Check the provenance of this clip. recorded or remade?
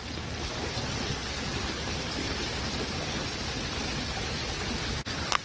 recorded